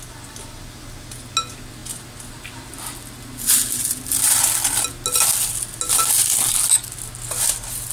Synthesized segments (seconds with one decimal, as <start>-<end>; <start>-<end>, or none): none